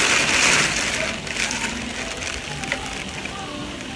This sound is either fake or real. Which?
real